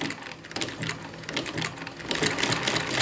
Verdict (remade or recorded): recorded